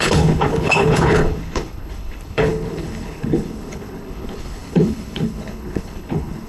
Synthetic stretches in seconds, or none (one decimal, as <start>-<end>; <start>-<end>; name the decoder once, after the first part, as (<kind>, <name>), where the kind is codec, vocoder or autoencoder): 0.0-6.5 (codec, HILCodec)

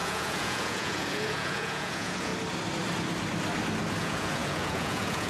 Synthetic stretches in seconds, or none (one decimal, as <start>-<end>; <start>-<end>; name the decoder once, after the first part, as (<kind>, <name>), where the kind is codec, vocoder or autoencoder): 0.0-2.3 (vocoder, Vocos); 4.0-5.3

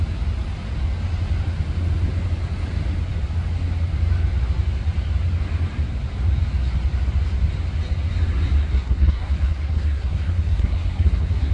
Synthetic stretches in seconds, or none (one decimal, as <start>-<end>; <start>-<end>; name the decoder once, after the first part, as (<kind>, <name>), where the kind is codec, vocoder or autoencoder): 8.6-11.5 (codec, SNAC)

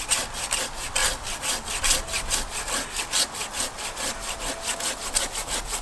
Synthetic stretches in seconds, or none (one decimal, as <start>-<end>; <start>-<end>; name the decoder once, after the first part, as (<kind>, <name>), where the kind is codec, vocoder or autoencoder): none

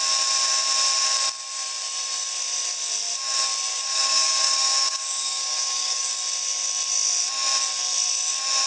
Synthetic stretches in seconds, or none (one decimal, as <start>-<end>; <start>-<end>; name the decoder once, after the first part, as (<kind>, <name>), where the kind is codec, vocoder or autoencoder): 3.7-6.1 (codec, DAC)

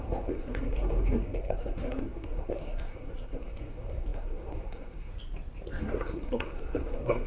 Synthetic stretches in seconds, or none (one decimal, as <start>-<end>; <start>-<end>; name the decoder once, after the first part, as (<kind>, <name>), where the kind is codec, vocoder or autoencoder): 0.0-5.1 (codec, SNAC); 5.8-7.3